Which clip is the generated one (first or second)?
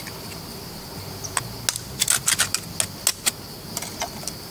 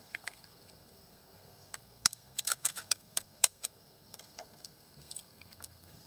second